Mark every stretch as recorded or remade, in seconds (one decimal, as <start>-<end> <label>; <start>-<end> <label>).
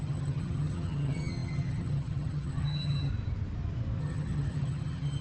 0.0-3.1 remade; 3.1-4.0 recorded; 4.0-5.2 remade